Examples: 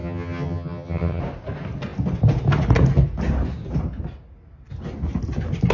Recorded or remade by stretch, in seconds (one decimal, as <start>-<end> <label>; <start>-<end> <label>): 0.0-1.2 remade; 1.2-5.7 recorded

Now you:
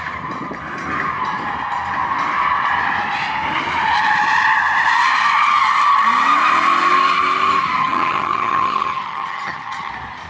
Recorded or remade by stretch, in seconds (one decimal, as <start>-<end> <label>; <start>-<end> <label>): 0.0-7.8 recorded; 7.8-9.9 remade; 9.9-10.3 recorded

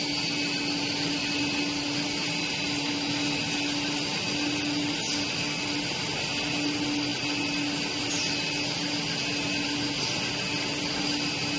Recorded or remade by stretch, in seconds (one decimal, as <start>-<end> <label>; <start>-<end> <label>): 0.0-11.6 recorded

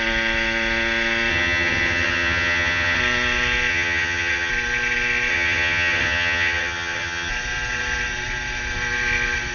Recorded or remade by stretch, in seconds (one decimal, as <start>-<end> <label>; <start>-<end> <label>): 0.0-1.3 recorded; 1.3-3.0 remade; 3.0-3.7 recorded; 3.7-4.5 remade; 4.5-5.3 recorded; 5.3-7.3 remade; 7.3-9.5 recorded

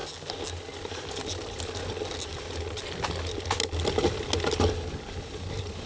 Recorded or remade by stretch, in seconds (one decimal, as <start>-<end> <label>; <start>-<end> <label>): 0.0-5.9 recorded

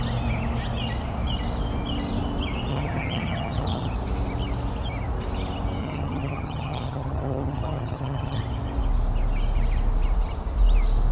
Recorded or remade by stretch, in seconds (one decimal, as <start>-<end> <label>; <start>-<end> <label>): 0.0-2.7 recorded; 2.7-3.9 remade; 3.9-5.8 recorded; 5.8-8.4 remade; 8.4-11.1 recorded

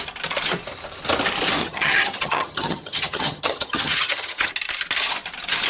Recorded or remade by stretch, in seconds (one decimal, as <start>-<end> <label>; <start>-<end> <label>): 0.0-1.6 recorded; 1.6-4.5 remade; 4.5-5.7 recorded

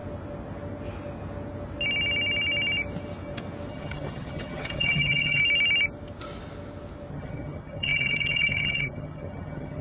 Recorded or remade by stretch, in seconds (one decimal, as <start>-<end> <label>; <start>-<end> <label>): 0.0-3.7 recorded; 3.7-5.4 remade; 5.4-7.1 recorded; 7.1-9.8 remade